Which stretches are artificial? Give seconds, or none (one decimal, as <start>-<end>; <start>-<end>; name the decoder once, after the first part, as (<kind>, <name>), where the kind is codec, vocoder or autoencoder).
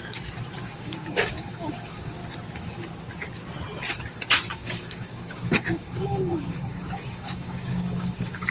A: 0.6-2.2 (codec, DAC); 4.5-8.5